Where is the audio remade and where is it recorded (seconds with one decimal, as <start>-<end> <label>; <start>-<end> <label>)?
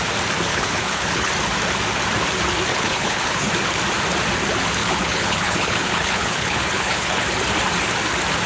0.0-0.5 recorded; 0.5-1.3 remade; 1.3-2.7 recorded; 2.7-3.5 remade; 3.5-4.8 recorded; 4.8-7.2 remade; 7.2-8.5 recorded